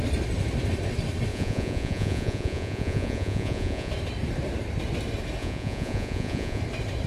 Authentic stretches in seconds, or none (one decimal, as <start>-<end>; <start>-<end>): 0.0-1.3; 3.9-5.4; 6.6-7.1